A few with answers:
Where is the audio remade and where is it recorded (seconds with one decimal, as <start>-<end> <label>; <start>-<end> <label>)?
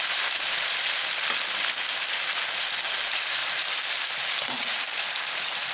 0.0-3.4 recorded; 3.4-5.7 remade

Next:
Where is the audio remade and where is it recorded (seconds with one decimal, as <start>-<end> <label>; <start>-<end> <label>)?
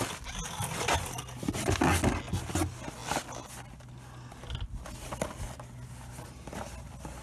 0.0-7.2 recorded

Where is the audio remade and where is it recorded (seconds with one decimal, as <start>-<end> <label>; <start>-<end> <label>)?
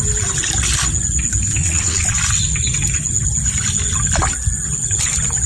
0.0-1.6 recorded; 1.6-2.2 remade; 2.2-5.5 recorded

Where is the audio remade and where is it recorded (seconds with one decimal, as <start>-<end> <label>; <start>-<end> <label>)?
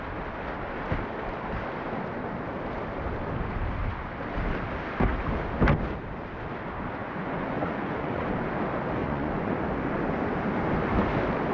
0.0-7.0 recorded; 7.0-8.4 remade; 8.4-9.0 recorded; 9.0-9.6 remade; 9.6-11.5 recorded